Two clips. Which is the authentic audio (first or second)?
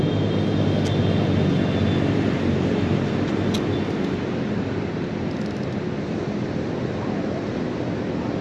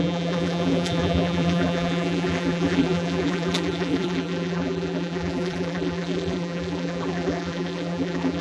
first